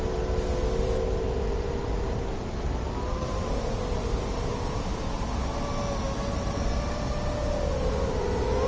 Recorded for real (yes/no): yes